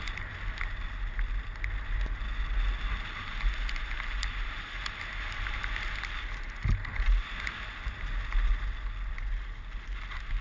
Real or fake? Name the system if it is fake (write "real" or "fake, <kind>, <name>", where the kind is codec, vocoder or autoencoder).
real